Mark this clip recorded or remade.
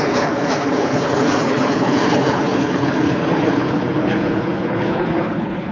remade